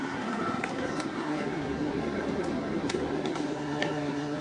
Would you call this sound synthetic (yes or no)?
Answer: yes